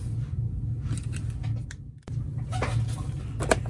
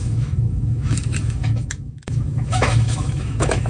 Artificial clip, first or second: second